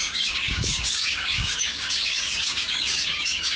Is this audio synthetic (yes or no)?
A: yes